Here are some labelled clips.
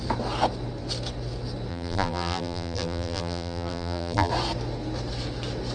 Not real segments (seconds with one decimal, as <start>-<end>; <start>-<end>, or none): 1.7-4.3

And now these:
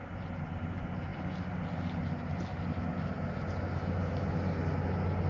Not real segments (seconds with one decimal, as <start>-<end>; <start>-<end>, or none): none

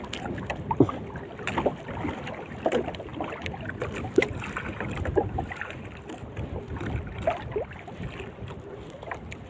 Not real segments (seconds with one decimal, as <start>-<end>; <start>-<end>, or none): none